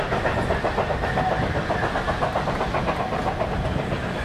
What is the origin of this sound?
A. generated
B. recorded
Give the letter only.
B